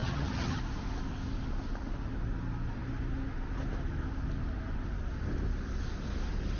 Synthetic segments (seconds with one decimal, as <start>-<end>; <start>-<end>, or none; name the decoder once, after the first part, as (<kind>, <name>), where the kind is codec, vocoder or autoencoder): 0.0-0.6 (vocoder, HiFi-GAN)

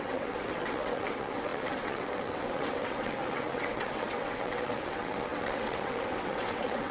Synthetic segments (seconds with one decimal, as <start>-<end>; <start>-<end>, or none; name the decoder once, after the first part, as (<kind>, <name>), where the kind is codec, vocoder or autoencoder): 0.0-6.9 (vocoder, WaveNeXt)

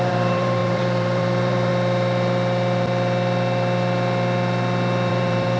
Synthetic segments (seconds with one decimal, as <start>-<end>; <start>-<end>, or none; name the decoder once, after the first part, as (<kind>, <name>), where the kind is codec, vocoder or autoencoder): 0.0-1.7 (vocoder, BigVGAN v2); 5.1-5.6

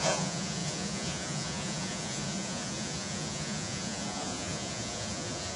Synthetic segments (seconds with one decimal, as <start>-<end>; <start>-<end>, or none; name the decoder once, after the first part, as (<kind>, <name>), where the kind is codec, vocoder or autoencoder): 0.0-5.6 (vocoder, Vocos)

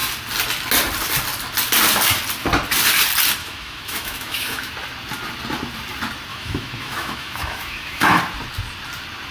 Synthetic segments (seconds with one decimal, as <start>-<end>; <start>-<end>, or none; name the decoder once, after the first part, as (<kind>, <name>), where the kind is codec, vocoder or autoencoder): 3.4-4.7 (autoencoder, DAC-VAE); 6.3-8.2

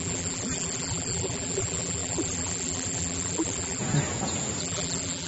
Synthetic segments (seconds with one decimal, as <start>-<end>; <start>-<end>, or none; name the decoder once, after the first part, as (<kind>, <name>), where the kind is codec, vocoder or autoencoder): 0.0-3.8 (vocoder, BigVGAN v2); 4.6-5.3